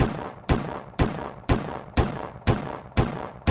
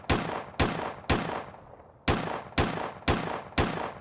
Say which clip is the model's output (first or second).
first